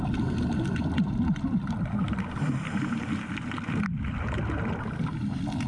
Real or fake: real